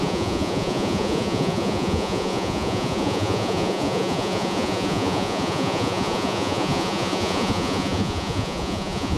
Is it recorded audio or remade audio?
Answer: remade